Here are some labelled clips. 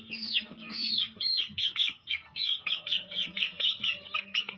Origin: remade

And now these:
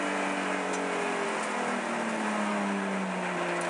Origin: recorded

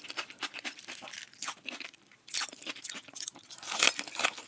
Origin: recorded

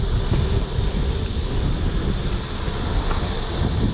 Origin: recorded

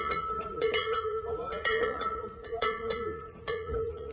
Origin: remade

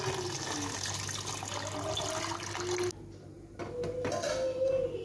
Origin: recorded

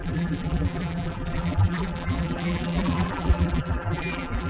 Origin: remade